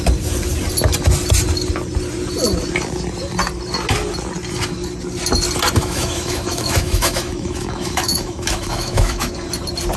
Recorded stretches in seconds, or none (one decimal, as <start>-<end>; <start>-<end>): 0.0-5.8; 9.3-10.0